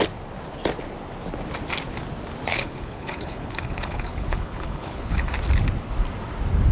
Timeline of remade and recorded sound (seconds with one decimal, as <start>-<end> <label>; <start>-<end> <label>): 0.0-2.5 recorded; 2.5-5.3 remade; 5.3-6.7 recorded